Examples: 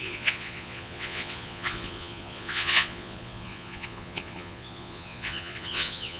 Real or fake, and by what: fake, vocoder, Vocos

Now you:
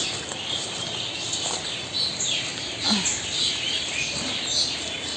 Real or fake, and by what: real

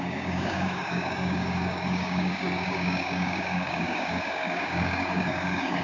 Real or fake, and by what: fake, codec, DAC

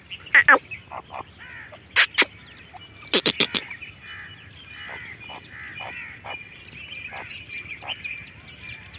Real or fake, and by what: real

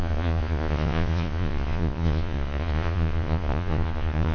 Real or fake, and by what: fake, vocoder, Vocos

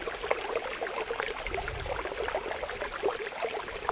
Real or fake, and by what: real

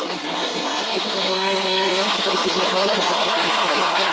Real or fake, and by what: fake, codec, SNAC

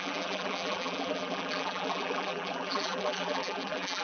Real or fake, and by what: fake, vocoder, BigVGAN v2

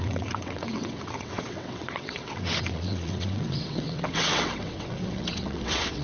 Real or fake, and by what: fake, vocoder, WaveNeXt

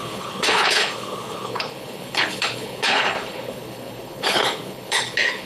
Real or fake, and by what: fake, codec, HILCodec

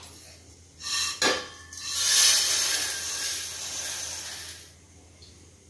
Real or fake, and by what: real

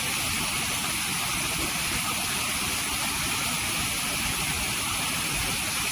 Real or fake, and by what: real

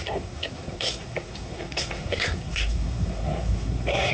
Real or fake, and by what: fake, codec, SNAC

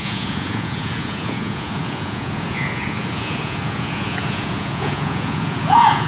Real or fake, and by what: fake, vocoder, Vocos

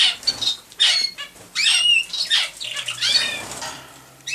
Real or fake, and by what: real